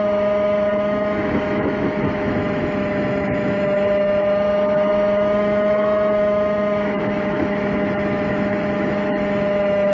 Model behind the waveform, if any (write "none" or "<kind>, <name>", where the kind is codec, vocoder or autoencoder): autoencoder, DAC-VAE